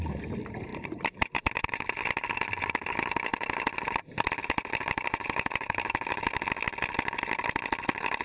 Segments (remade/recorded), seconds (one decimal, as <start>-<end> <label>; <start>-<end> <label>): 0.0-0.7 recorded; 0.7-1.8 remade; 1.8-4.4 recorded; 4.4-6.4 remade; 6.4-8.2 recorded